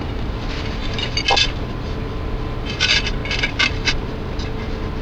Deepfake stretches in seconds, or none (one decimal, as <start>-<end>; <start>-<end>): 0.0-0.8; 2.8-3.2